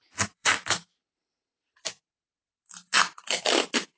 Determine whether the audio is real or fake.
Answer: fake